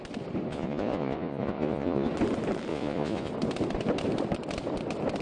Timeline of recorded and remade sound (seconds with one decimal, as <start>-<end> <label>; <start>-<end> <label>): 0.0-0.5 recorded; 0.5-2.1 remade; 2.1-2.7 recorded; 2.7-3.3 remade; 3.3-5.2 recorded